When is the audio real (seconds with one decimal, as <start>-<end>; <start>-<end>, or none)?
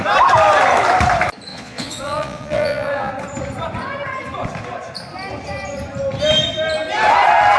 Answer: 0.0-1.5; 3.1-7.6